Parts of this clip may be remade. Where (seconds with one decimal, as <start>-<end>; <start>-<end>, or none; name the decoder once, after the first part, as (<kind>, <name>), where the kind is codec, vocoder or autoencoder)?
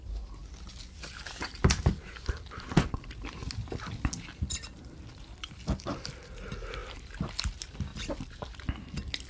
0.4-2.2 (vocoder, BigVGAN v2)